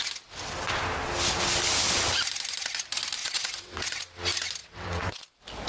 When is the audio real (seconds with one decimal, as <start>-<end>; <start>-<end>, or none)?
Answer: 0.0-3.2; 4.0-4.6; 5.2-5.7